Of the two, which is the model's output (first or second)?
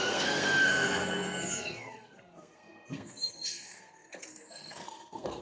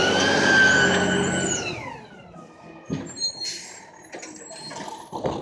first